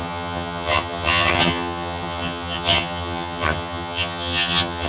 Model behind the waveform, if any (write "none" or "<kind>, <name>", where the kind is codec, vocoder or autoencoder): vocoder, HiFi-GAN